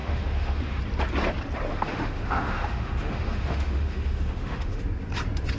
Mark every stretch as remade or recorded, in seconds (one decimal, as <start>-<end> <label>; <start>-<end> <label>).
0.0-0.8 remade; 0.8-1.7 recorded; 1.7-4.8 remade; 4.8-5.6 recorded